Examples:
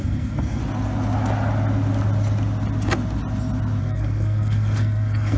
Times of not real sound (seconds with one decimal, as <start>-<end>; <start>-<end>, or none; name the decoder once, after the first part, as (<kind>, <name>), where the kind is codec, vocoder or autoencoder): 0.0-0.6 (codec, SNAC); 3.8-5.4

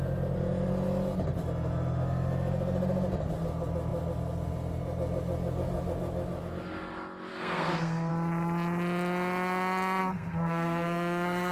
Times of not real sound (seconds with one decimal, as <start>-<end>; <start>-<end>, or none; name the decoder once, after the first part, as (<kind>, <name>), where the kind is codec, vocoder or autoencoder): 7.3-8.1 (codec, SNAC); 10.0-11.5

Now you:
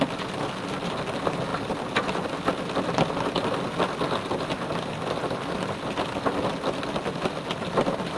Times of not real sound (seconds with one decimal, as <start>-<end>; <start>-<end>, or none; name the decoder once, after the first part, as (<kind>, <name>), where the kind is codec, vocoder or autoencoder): none

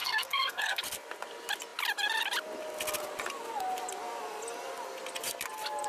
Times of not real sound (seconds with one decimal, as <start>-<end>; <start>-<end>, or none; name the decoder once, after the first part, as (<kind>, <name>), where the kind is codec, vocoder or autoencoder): 0.0-0.8 (codec, SNAC)

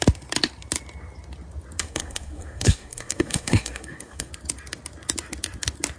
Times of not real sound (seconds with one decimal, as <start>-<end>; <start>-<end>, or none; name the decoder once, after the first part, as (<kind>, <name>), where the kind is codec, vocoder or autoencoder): 1.8-4.3 (codec, SNAC)

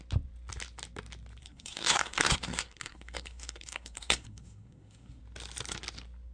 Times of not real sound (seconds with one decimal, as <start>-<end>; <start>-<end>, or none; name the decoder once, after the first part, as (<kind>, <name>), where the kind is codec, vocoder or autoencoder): 1.4-5.2 (codec, SNAC)